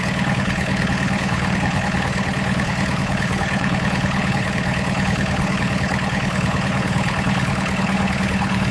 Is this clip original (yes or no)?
no